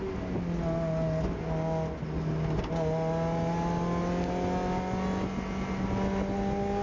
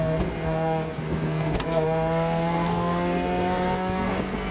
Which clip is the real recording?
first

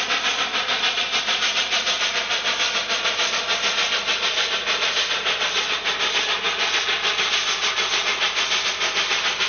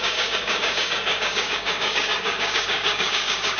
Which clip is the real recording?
first